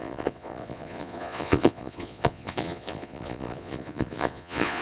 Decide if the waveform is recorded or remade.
remade